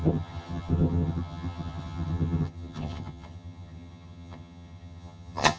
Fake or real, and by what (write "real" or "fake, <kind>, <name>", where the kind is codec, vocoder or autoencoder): fake, vocoder, HiFi-GAN